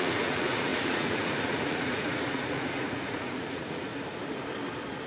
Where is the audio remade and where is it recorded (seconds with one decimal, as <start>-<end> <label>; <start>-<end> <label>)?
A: 0.0-3.9 remade; 3.9-5.1 recorded